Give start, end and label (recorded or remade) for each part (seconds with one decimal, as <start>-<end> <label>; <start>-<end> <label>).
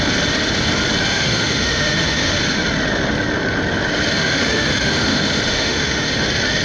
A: 0.0-1.1 recorded; 1.1-2.4 remade; 2.4-4.1 recorded; 4.1-6.1 remade; 6.1-6.6 recorded